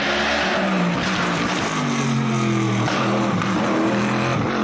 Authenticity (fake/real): real